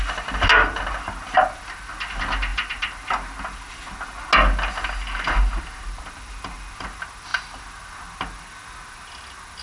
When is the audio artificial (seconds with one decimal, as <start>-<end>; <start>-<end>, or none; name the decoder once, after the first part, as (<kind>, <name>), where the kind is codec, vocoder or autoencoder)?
none